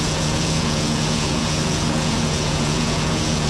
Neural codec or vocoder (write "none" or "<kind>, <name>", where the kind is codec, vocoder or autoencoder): vocoder, Vocos